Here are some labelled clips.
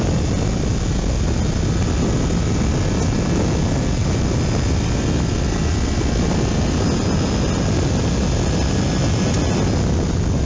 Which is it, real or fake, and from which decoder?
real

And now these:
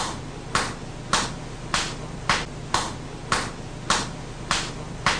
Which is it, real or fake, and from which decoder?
real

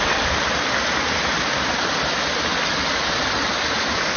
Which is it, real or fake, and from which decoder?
real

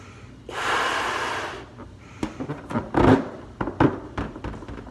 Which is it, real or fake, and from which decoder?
real